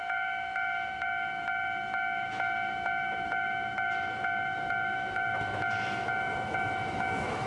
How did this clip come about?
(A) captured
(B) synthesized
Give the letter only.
B